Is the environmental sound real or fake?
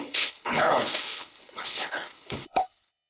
fake